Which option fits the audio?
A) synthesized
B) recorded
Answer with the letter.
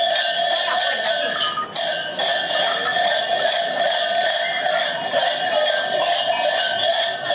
B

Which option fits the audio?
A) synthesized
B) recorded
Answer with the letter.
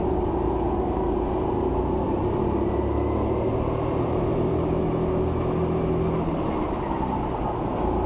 B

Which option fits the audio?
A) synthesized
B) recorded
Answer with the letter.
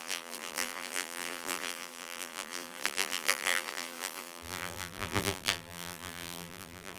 A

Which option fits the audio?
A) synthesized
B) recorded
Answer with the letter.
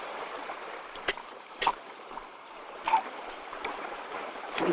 A